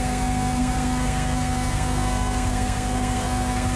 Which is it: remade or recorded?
remade